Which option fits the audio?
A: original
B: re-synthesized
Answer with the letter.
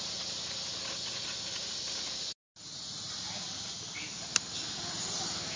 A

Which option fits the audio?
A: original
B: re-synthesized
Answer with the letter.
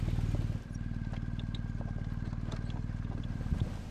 A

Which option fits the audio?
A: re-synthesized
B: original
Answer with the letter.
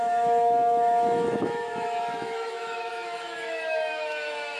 A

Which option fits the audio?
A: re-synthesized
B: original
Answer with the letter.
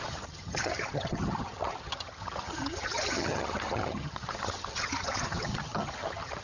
A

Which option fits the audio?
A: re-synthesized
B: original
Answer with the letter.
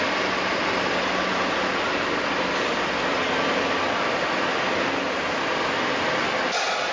B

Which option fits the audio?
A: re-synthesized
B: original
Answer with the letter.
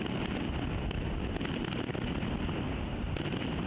B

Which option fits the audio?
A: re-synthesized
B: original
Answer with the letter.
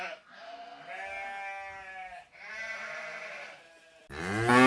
B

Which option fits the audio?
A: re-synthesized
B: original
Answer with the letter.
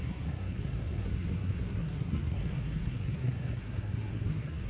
A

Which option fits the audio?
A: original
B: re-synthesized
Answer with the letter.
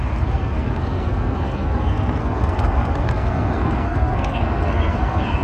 B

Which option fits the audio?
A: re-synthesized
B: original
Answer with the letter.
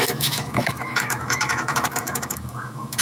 A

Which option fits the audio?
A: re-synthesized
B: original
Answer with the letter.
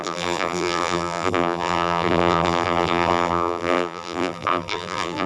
A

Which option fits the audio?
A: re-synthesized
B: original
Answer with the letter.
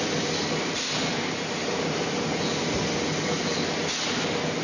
B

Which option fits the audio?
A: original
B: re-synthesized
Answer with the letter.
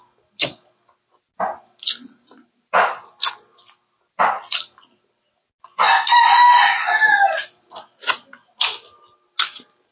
A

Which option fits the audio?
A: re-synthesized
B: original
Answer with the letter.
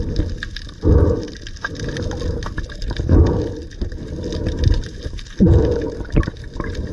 B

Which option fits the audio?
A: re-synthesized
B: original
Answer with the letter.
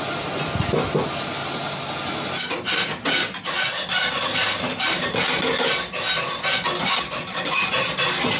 B